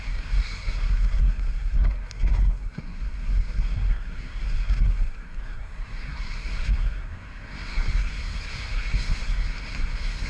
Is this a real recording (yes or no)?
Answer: no